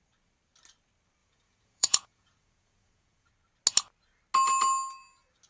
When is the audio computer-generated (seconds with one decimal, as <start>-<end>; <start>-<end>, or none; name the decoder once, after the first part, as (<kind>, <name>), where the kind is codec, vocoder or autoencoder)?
1.2-3.3 (vocoder, Vocos)